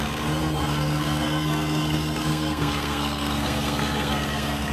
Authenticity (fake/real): fake